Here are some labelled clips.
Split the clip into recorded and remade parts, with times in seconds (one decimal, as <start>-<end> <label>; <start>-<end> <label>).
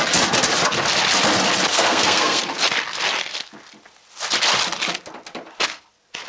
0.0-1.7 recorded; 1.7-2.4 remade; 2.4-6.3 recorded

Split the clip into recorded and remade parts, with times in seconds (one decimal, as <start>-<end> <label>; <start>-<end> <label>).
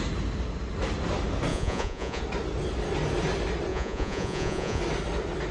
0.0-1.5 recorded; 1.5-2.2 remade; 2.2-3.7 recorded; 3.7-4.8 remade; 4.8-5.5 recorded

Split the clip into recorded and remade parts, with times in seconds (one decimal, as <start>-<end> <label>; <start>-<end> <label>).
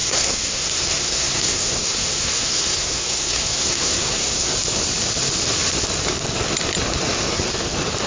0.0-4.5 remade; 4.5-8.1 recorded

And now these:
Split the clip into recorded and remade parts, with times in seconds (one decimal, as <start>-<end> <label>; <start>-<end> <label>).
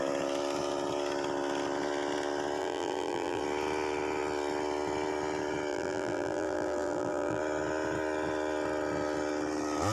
0.0-2.6 recorded; 2.6-3.4 remade; 3.4-5.7 recorded; 5.7-7.4 remade; 7.4-9.9 recorded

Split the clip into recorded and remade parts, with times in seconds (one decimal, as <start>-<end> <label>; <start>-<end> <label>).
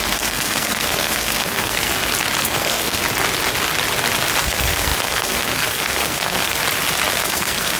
0.0-1.9 remade; 1.9-2.4 recorded; 2.4-3.0 remade; 3.0-4.4 recorded; 4.4-6.6 remade; 6.6-7.1 recorded; 7.1-7.8 remade